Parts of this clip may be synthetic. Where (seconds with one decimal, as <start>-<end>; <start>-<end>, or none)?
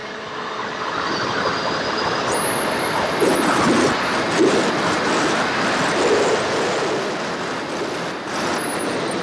none